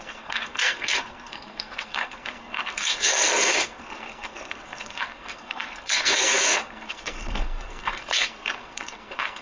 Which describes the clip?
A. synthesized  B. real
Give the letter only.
A